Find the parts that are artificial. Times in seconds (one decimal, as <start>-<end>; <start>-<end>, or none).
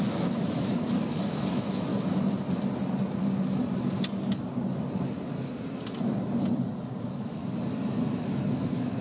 0.0-1.9; 7.0-7.4; 8.0-9.0